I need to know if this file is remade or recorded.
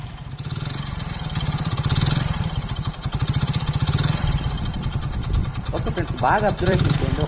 remade